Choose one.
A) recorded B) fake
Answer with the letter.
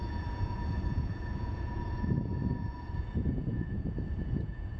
B